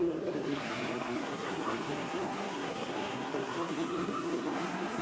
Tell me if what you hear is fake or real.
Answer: fake